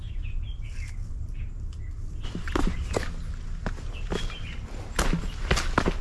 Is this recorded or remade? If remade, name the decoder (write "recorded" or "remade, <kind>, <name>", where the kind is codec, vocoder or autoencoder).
recorded